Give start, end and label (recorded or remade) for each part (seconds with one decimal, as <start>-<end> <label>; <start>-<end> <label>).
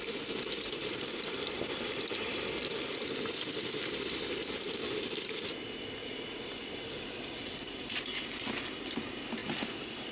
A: 0.0-10.1 recorded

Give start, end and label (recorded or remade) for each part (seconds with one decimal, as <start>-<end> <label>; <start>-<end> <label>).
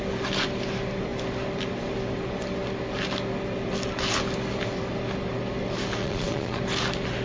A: 0.0-6.0 recorded; 6.0-6.6 remade; 6.6-7.2 recorded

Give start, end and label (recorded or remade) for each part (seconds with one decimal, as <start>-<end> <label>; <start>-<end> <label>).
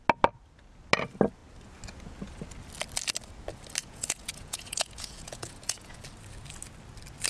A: 0.0-3.8 recorded; 3.8-6.0 remade; 6.0-7.3 recorded